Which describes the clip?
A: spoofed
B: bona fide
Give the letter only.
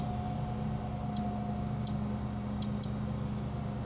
B